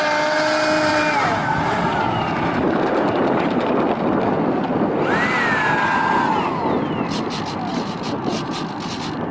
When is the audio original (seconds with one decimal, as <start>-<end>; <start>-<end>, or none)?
0.0-0.9; 3.9-7.7; 8.5-9.3